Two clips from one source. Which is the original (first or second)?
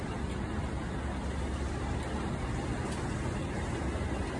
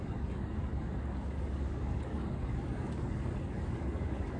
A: first